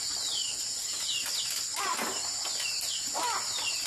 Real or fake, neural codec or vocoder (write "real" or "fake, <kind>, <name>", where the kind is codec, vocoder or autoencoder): real